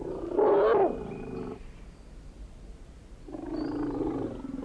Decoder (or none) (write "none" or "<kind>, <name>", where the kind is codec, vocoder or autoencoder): none